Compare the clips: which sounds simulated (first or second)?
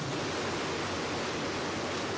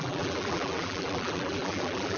second